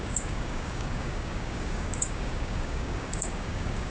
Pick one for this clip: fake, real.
fake